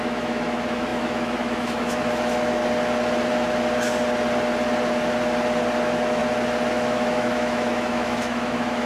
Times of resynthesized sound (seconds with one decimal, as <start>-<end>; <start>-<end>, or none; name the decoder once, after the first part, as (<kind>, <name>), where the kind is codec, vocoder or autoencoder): 0.0-2.6 (autoencoder, DAC-VAE); 5.8-6.2; 6.7-8.9